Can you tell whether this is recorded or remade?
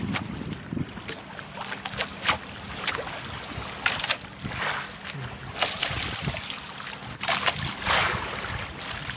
recorded